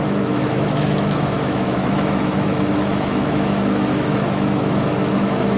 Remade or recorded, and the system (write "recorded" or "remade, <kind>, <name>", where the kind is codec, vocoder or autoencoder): remade, autoencoder, DAC-VAE